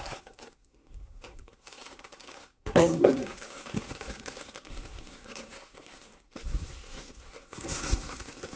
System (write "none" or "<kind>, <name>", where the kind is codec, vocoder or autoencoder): codec, SNAC